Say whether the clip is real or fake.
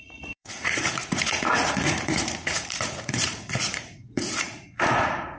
fake